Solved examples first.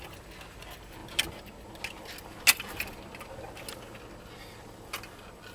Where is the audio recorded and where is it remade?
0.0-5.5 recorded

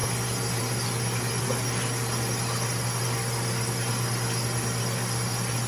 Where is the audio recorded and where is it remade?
0.0-5.7 recorded

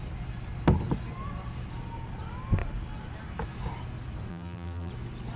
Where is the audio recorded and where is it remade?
0.0-4.3 recorded; 4.3-4.9 remade; 4.9-5.4 recorded